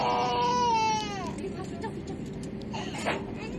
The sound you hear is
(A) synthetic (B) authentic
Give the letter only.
B